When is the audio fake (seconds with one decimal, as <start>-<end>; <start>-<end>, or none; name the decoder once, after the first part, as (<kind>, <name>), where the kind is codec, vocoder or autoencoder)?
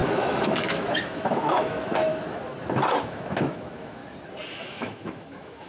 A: 0.0-2.1 (autoencoder, DAC-VAE); 3.0-4.0; 4.5-5.7